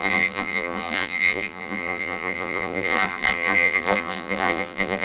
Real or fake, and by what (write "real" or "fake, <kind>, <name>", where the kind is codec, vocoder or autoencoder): fake, vocoder, BigVGAN v2